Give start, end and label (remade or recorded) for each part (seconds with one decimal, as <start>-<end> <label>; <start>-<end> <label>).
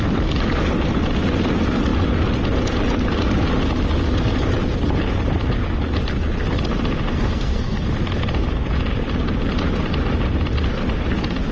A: 0.0-7.1 recorded; 7.1-7.9 remade; 7.9-11.5 recorded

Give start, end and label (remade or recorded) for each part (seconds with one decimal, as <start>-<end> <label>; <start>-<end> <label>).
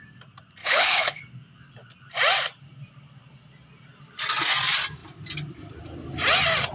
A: 0.0-0.6 recorded; 0.6-1.2 remade; 1.2-6.7 recorded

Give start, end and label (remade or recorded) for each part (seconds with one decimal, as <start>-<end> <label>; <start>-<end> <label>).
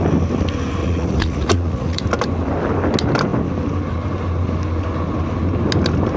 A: 0.0-0.8 recorded; 0.8-2.0 remade; 2.0-6.2 recorded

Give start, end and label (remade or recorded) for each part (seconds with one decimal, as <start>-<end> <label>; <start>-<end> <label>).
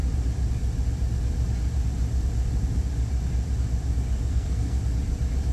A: 0.0-4.3 recorded; 4.3-4.8 remade; 4.8-5.5 recorded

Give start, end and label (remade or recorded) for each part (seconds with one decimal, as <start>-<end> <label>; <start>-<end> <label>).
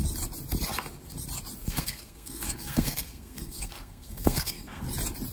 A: 0.0-1.6 recorded; 1.6-4.8 remade; 4.8-5.3 recorded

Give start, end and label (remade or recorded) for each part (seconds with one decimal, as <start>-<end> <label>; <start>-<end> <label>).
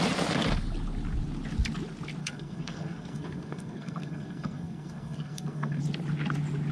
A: 0.0-2.2 recorded; 2.2-5.8 remade; 5.8-6.7 recorded